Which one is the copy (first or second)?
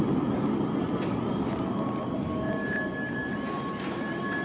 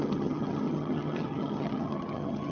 second